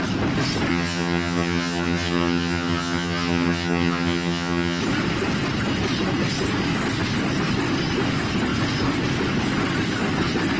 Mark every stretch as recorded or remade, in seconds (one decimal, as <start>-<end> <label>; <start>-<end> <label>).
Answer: 0.0-0.7 recorded; 0.7-4.8 remade; 4.8-10.6 recorded